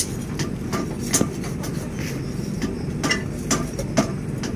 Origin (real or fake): real